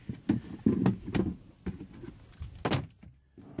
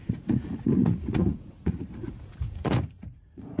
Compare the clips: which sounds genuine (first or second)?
first